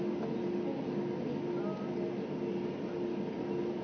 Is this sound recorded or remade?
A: recorded